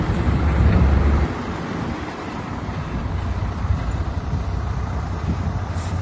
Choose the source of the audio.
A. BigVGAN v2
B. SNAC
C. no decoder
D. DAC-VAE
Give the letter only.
A